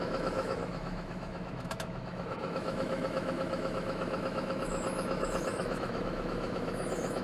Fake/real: fake